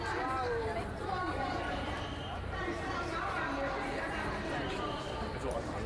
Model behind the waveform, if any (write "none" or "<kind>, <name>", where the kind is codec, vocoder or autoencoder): vocoder, BigVGAN v2